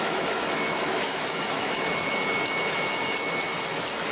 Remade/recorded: remade